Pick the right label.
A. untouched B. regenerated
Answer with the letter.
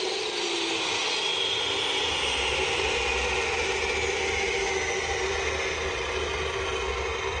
A